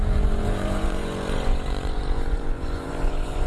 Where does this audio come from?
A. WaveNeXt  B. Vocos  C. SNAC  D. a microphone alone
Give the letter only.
B